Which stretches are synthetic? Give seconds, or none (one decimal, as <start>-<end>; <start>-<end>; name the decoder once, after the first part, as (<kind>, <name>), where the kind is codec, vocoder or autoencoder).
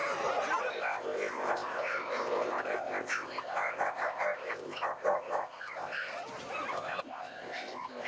0.7-6.1 (codec, ZipCodec); 6.7-8.1